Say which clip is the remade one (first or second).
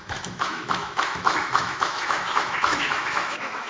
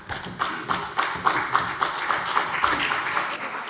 first